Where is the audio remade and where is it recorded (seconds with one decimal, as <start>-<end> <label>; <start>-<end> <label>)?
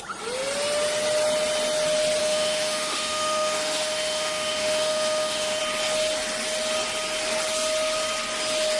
0.0-2.2 recorded; 2.2-5.6 remade; 5.6-8.8 recorded